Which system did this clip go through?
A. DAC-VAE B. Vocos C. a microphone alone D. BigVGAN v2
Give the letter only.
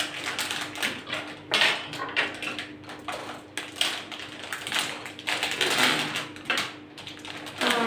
C